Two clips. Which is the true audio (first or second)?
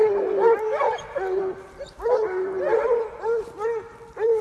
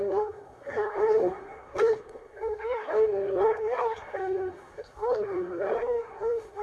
first